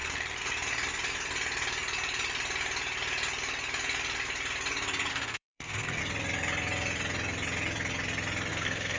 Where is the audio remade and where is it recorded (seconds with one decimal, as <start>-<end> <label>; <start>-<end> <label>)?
0.0-5.1 recorded; 5.1-6.0 remade; 6.0-8.5 recorded; 8.5-9.0 remade